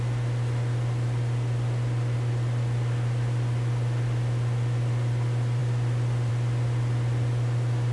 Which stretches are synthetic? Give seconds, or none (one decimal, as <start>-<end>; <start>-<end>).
none